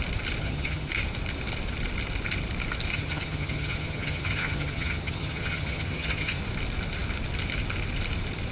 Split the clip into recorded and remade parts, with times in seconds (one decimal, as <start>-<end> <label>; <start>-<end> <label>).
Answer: 0.0-0.4 recorded; 0.4-0.9 remade; 0.9-2.9 recorded; 2.9-6.4 remade; 6.4-8.5 recorded